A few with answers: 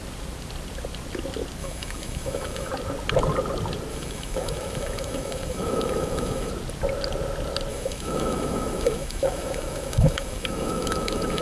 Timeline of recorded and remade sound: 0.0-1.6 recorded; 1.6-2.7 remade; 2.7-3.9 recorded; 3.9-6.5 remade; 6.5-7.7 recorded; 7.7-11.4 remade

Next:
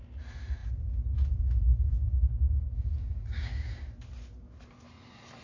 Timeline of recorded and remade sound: 0.0-2.0 recorded; 2.0-3.9 remade; 3.9-5.4 recorded

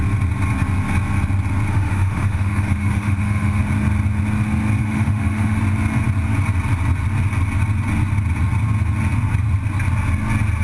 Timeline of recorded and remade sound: 0.0-1.7 recorded; 1.7-3.6 remade; 3.6-4.8 recorded; 4.8-5.6 remade; 5.6-10.6 recorded

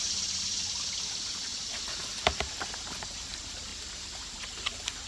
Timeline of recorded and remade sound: 0.0-3.7 remade; 3.7-4.2 recorded; 4.2-5.1 remade

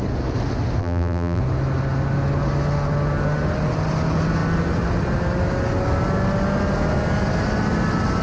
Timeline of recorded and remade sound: 0.0-0.8 recorded; 0.8-1.4 remade; 1.4-8.2 recorded

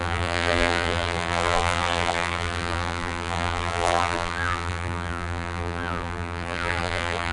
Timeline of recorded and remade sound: 0.0-7.3 remade

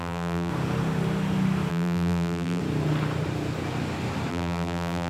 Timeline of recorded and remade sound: 0.0-0.5 remade; 0.5-1.7 recorded; 1.7-2.6 remade; 2.6-4.3 recorded; 4.3-5.1 remade